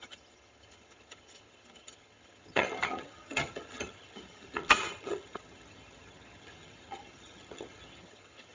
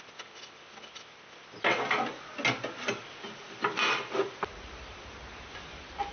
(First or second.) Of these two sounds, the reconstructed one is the first